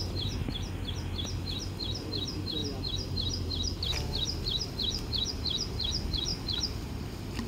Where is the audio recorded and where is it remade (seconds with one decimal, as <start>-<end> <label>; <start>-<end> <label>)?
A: 0.0-7.5 recorded

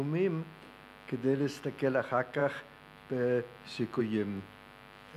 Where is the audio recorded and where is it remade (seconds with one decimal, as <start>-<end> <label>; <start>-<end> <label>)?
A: 0.0-5.2 recorded